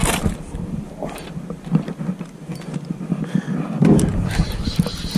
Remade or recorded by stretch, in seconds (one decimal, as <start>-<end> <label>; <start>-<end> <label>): 0.0-5.2 recorded